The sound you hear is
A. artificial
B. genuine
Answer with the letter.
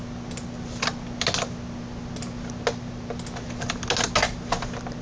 B